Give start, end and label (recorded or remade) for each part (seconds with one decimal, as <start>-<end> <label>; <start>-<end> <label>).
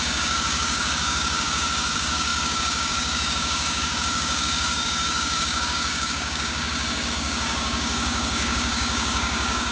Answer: 0.0-9.7 remade